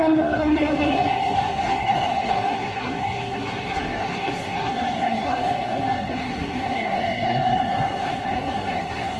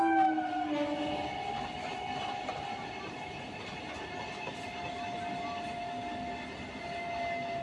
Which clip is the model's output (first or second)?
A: first